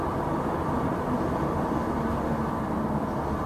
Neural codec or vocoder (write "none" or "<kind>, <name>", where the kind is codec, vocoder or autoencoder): none